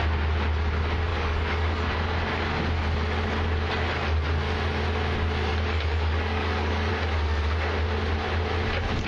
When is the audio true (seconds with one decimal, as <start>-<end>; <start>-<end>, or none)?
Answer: 0.0-1.1; 1.9-5.5; 6.9-9.1